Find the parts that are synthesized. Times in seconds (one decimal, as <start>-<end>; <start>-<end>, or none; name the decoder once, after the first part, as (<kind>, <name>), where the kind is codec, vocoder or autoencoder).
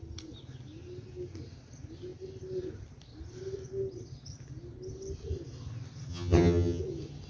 6.1-6.8 (vocoder, HiFi-GAN)